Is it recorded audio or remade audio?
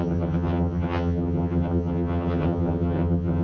remade